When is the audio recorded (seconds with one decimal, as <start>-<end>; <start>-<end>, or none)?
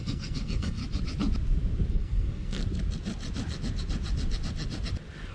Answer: 0.8-1.9; 2.6-5.3